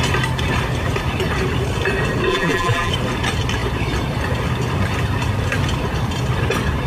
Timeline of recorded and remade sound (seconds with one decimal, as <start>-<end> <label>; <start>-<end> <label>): 0.0-2.3 recorded; 2.3-2.9 remade; 2.9-6.9 recorded